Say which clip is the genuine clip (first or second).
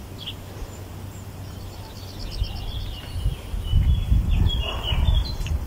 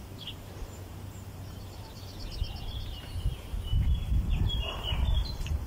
first